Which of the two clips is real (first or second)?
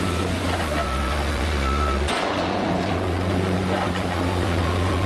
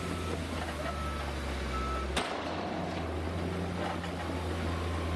second